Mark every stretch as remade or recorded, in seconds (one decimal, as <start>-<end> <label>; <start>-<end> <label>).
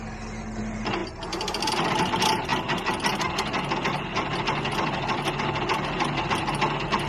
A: 0.0-7.1 recorded